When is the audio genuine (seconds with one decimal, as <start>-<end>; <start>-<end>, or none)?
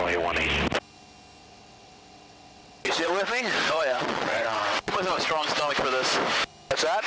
0.0-1.4; 5.7-7.1